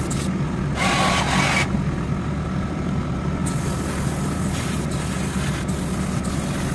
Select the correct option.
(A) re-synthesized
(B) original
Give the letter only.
B